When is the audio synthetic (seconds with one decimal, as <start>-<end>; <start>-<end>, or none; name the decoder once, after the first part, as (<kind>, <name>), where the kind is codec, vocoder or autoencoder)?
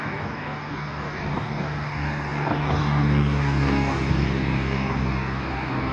0.0-5.9 (codec, DAC)